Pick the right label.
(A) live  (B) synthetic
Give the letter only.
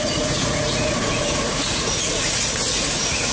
B